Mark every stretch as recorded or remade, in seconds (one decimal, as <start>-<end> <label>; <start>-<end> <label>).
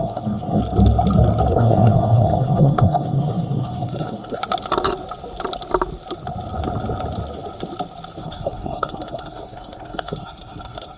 0.0-0.6 remade; 0.6-1.5 recorded; 1.5-4.4 remade; 4.4-8.2 recorded; 8.2-11.0 remade